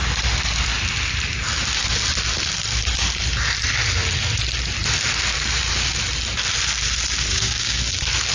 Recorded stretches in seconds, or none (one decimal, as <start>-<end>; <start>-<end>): 0.0-7.3; 7.8-8.3